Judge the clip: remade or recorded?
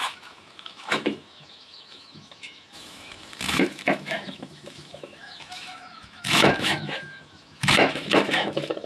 remade